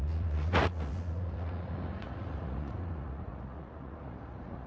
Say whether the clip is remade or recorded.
remade